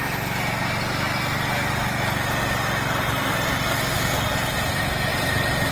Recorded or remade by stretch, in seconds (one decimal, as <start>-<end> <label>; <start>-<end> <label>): 0.0-5.1 recorded; 5.1-5.7 remade